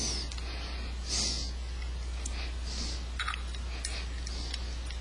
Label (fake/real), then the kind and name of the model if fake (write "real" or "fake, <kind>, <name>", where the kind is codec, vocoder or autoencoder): real